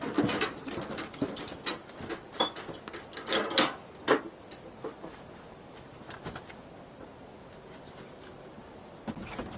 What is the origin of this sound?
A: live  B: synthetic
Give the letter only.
A